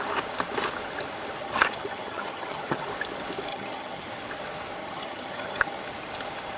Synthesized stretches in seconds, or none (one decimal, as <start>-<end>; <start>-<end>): 1.4-2.8; 3.5-4.1; 4.8-5.8